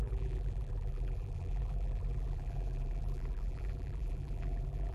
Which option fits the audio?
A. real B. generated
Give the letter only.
B